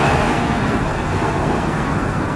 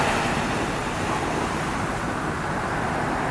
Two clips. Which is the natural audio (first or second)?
second